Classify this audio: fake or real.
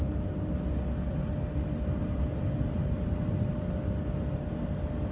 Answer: real